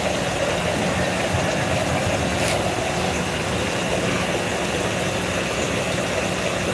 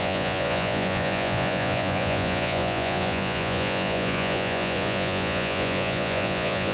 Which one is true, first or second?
first